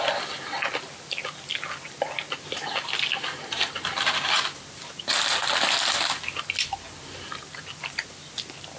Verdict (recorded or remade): recorded